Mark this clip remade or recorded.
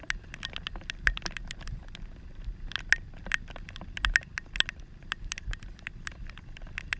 recorded